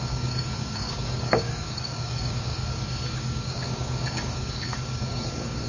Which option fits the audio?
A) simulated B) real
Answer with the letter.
A